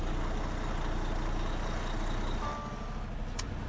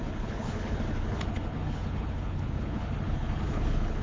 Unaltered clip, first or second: first